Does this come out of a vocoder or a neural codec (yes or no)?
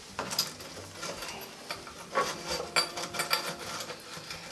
no